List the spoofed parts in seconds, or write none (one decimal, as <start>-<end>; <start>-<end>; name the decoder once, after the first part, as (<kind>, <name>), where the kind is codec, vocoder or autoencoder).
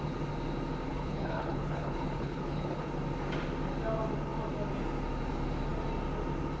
0.9-2.9 (codec, HILCodec)